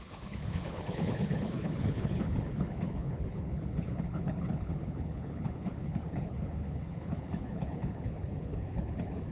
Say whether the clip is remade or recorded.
remade